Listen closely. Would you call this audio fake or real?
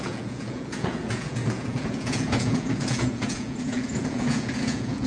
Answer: fake